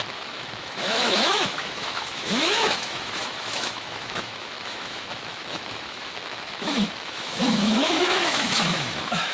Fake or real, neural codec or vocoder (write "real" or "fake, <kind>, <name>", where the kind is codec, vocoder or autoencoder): fake, autoencoder, DAC-VAE